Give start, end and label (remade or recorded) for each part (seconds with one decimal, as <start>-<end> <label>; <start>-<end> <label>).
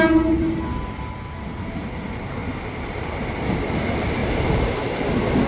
0.0-4.2 recorded; 4.2-5.1 remade; 5.1-5.5 recorded